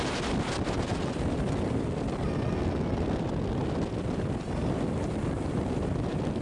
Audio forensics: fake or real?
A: real